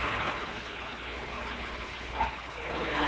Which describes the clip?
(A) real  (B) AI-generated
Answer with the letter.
B